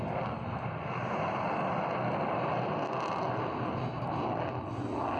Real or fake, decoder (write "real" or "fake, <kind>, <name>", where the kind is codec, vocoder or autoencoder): real